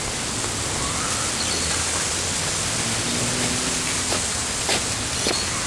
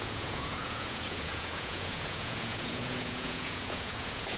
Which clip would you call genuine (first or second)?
first